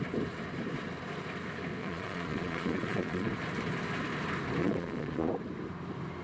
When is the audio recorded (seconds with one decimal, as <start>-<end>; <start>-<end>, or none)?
0.0-1.8; 3.3-4.6; 5.3-6.2